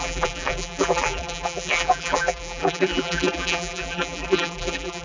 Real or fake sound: fake